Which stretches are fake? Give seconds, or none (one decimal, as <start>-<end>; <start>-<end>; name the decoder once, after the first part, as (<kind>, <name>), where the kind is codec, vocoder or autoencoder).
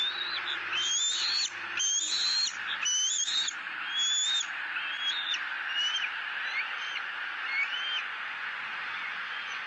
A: 8.0-9.7 (vocoder, Vocos)